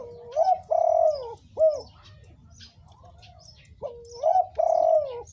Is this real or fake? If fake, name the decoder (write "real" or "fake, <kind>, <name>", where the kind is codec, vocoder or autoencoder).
real